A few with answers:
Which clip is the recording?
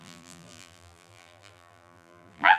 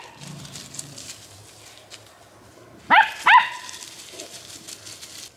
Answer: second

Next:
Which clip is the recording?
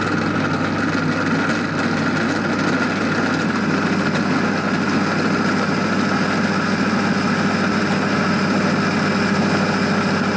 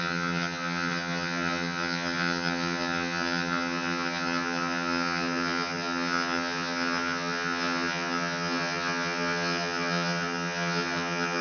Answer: first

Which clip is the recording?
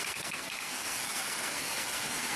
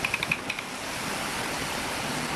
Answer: second